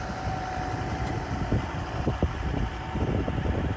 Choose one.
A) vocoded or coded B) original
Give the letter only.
B